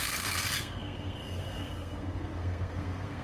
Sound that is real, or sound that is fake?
fake